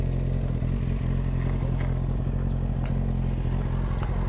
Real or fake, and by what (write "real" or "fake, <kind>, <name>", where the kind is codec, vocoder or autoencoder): real